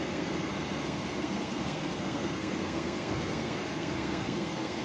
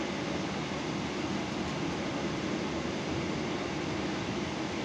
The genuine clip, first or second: second